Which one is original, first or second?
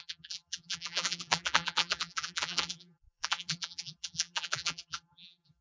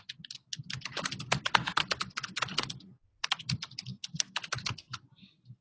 second